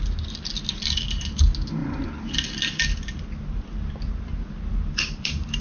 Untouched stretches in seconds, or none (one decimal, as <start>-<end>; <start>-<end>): 0.0-1.8